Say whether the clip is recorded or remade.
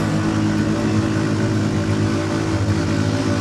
recorded